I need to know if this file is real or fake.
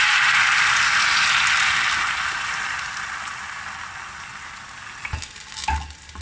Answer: real